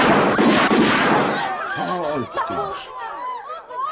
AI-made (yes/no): no